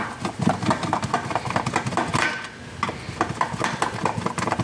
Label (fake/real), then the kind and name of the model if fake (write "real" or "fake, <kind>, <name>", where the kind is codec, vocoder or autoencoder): real